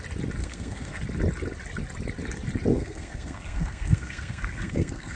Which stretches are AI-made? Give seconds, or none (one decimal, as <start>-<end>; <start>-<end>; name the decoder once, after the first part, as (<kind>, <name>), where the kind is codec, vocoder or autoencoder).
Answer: 0.4-1.0 (codec, SNAC); 2.7-5.2